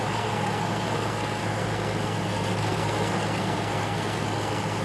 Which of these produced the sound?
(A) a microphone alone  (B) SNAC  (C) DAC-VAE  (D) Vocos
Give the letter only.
B